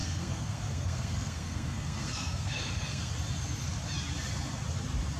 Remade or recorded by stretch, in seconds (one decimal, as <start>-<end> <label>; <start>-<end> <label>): 0.0-3.1 remade; 3.1-5.2 recorded